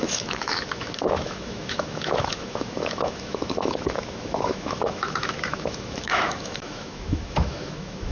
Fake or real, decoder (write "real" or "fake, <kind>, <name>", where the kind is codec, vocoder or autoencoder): fake, autoencoder, DAC-VAE